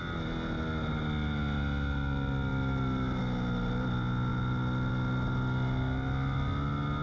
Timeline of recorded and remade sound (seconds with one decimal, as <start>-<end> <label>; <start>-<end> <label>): 0.0-7.0 recorded

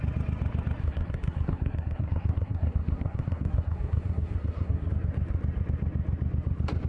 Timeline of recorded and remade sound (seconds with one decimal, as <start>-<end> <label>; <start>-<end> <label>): 0.0-0.8 recorded; 0.8-4.9 remade; 4.9-6.9 recorded

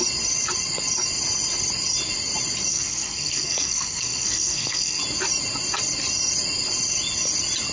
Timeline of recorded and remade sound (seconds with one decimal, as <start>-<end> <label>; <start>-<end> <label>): 0.0-2.7 recorded; 2.7-5.0 remade; 5.0-7.7 recorded

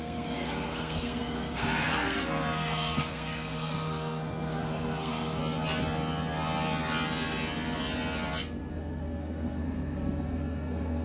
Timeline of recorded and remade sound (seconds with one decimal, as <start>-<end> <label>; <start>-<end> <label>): 0.0-5.4 remade; 5.4-8.7 recorded; 8.7-11.0 remade